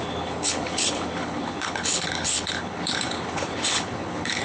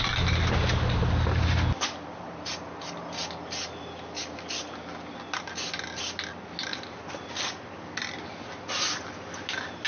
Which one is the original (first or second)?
second